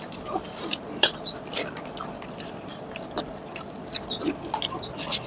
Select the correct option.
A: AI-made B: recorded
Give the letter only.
B